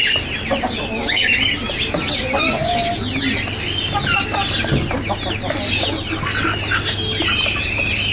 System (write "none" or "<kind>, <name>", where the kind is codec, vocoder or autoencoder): none